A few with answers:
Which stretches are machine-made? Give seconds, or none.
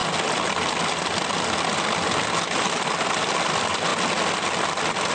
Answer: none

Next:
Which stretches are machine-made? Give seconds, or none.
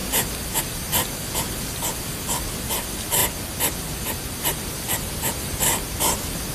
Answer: none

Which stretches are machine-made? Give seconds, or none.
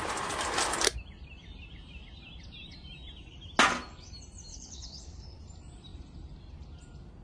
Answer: 4.5-5.4 (codec, HILCodec)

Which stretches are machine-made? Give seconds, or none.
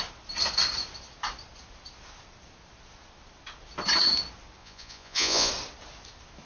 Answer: 4.6-5.5 (vocoder, Vocos)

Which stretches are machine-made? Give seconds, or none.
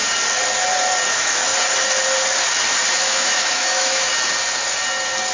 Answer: 1.1-1.5 (autoencoder, DAC-VAE); 3.0-4.1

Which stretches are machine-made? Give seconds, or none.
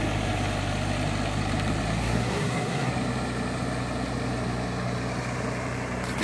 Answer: 2.0-2.9 (codec, SNAC)